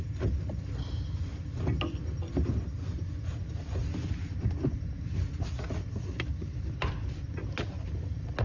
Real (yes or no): yes